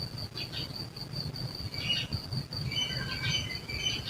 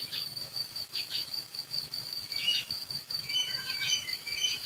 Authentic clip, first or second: first